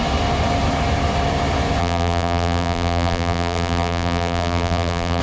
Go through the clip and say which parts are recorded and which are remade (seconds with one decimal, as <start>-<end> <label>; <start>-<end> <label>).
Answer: 0.0-1.8 recorded; 1.8-5.2 remade